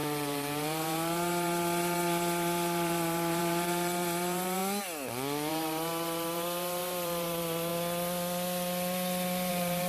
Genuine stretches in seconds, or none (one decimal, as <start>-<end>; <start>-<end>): 4.6-5.5; 7.7-9.5